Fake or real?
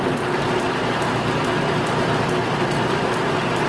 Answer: real